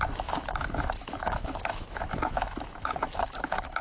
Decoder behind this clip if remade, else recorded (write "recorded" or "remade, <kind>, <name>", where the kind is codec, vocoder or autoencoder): remade, autoencoder, DAC-VAE